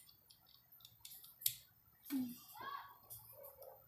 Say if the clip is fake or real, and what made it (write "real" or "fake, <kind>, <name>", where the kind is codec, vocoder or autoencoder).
real